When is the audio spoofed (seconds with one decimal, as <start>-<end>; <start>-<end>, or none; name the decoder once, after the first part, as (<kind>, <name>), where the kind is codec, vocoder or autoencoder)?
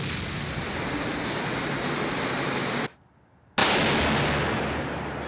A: none